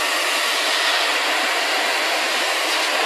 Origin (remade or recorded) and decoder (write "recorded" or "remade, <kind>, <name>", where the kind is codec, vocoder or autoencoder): recorded